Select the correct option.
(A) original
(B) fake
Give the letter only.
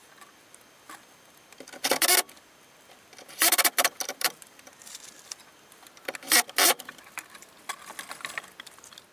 A